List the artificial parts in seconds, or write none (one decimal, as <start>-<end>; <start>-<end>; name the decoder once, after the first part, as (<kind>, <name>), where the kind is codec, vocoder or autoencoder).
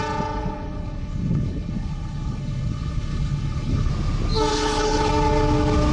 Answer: 0.4-3.9 (codec, HILCodec); 4.5-5.1